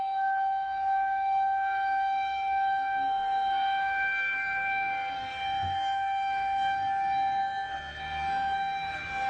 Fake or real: fake